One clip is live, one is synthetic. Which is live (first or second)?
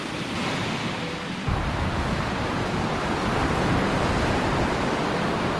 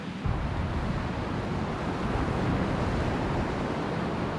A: second